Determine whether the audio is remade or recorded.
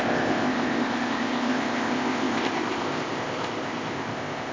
remade